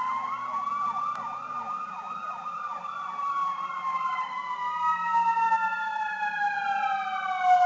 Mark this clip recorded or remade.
recorded